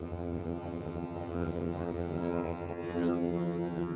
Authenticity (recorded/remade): remade